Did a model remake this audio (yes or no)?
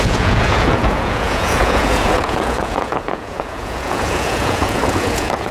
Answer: yes